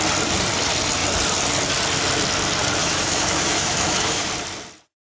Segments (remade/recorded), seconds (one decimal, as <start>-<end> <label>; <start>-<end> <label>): 0.0-2.8 recorded; 2.8-4.3 remade; 4.3-5.2 recorded